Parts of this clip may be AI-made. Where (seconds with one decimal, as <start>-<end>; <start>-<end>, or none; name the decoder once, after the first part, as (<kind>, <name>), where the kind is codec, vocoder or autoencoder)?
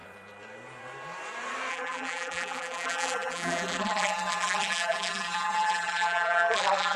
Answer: 1.7-7.0 (vocoder, BigVGAN v2)